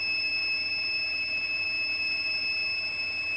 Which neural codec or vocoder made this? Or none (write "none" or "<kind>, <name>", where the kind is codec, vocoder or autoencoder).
vocoder, BigVGAN v2